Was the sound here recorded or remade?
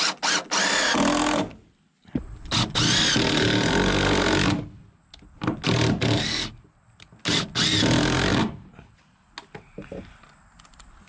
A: recorded